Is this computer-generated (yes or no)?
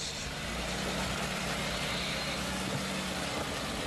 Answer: no